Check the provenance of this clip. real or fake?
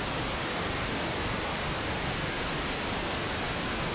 real